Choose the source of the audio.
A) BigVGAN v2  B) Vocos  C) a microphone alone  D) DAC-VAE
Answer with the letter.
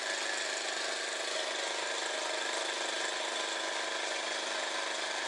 C